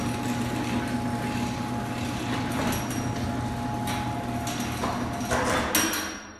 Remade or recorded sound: recorded